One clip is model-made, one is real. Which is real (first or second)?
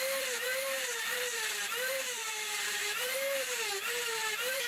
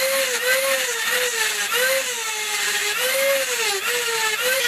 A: second